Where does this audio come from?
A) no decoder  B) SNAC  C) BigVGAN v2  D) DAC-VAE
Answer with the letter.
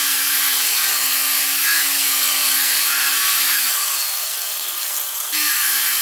B